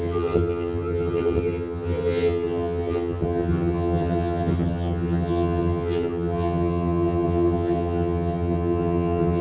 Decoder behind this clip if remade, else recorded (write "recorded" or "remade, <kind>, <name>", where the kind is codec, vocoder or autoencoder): remade, vocoder, HiFi-GAN